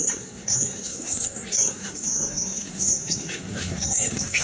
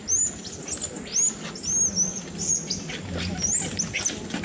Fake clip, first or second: first